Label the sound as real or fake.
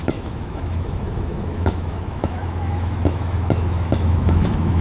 fake